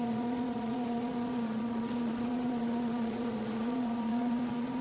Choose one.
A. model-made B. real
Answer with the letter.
A